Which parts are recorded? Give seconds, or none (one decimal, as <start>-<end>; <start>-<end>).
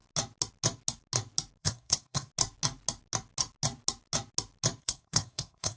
0.0-1.6; 2.3-4.8